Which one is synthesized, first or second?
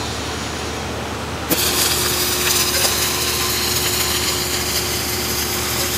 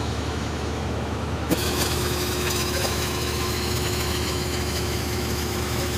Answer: second